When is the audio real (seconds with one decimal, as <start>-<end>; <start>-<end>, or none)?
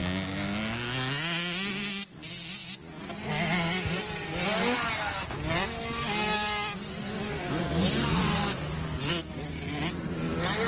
0.0-10.7